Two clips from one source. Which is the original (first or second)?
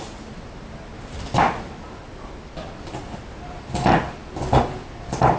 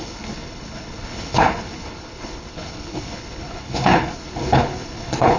first